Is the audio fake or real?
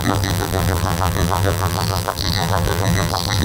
fake